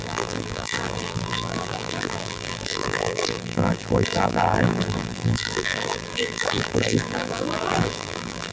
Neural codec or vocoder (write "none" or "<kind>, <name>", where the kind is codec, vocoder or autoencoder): vocoder, BigVGAN v2